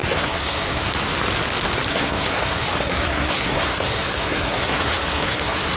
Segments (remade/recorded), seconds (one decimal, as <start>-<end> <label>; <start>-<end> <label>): 0.0-0.8 remade; 0.8-1.9 recorded; 1.9-5.8 remade